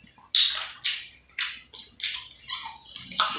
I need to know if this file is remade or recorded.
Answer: recorded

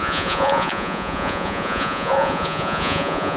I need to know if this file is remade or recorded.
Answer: remade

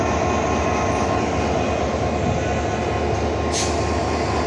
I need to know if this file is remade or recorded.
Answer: recorded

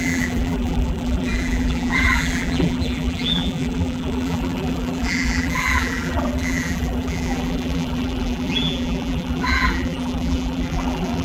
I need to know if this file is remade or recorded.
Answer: remade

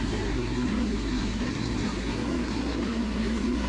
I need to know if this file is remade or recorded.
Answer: remade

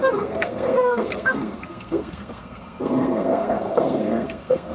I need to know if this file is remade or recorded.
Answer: remade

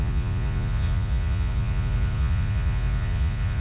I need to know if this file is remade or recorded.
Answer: remade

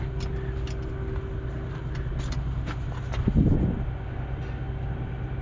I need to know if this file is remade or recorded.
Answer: recorded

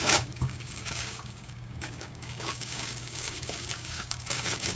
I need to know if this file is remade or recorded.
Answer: remade